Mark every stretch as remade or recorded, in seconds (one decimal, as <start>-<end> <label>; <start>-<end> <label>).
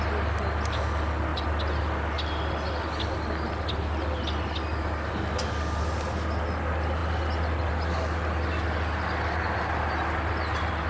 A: 0.0-10.9 recorded